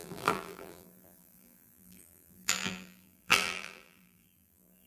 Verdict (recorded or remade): remade